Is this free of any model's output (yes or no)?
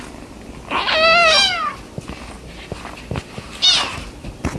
yes